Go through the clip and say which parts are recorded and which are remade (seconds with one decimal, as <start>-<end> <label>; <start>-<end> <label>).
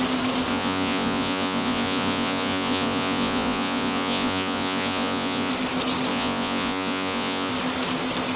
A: 0.0-0.5 recorded; 0.5-5.5 remade; 5.5-6.1 recorded; 6.1-7.5 remade; 7.5-8.4 recorded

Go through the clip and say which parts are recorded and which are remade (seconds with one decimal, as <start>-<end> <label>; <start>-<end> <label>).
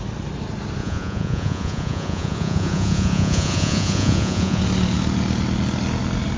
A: 0.0-0.8 recorded; 0.8-4.6 remade; 4.6-6.4 recorded